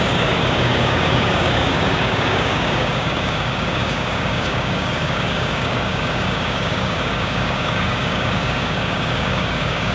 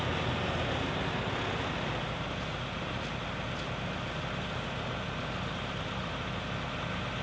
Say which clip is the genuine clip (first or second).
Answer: second